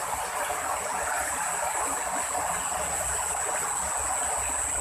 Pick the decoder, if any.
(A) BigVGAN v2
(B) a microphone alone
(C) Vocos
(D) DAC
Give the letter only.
B